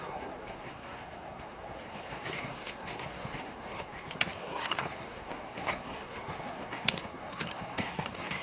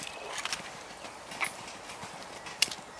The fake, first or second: first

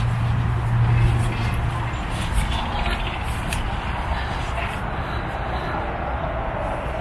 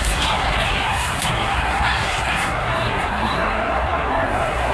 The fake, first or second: second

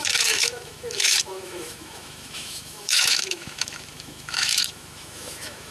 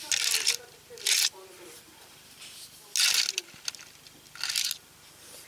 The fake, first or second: first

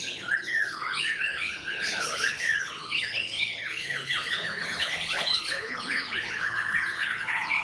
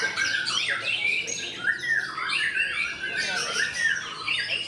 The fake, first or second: first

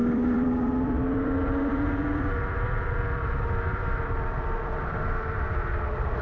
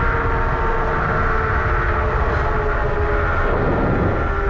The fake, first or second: first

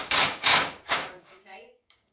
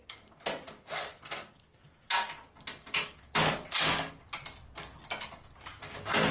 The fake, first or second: first